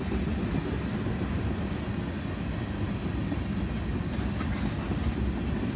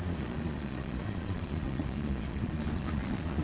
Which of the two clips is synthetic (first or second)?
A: second